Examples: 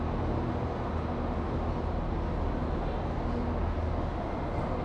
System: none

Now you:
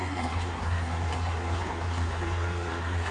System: codec, SNAC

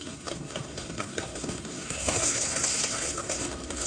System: codec, SNAC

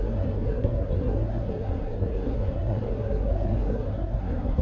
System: codec, SNAC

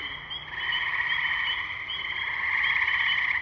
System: none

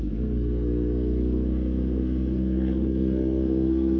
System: codec, SNAC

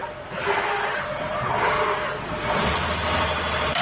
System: none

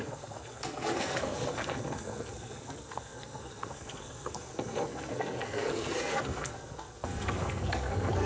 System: codec, SNAC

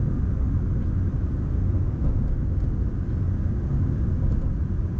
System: none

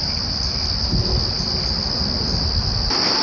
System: none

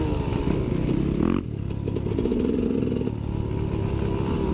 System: none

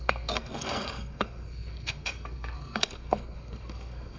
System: codec, SNAC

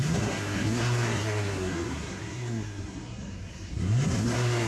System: codec, SNAC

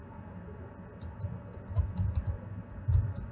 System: none